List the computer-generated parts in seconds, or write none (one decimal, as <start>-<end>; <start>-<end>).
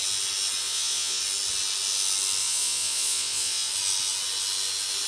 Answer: 0.6-1.2; 2.4-3.7